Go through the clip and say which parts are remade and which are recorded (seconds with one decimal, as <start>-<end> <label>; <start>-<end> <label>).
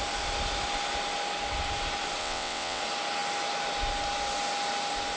0.0-2.2 recorded; 2.2-2.8 remade; 2.8-5.2 recorded